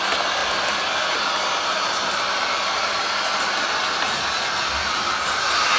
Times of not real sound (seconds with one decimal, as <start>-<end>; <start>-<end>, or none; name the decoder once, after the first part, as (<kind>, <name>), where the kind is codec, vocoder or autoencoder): 4.8-5.8 (vocoder, BigVGAN v2)